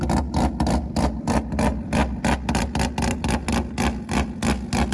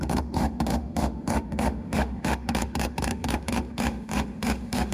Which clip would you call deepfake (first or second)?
second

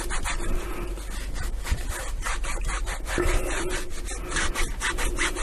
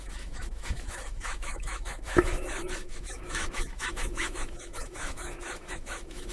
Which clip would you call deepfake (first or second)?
second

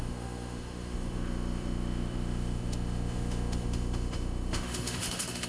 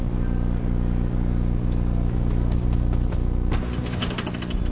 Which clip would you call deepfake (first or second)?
first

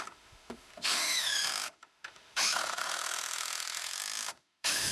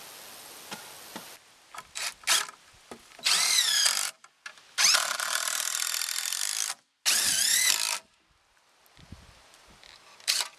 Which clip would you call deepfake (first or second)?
first